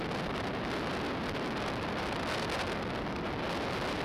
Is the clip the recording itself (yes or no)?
yes